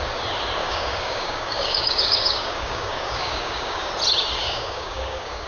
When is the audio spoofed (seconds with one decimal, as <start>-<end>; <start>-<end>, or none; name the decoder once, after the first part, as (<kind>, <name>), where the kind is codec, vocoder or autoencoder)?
0.6-3.9 (codec, DAC); 4.4-5.5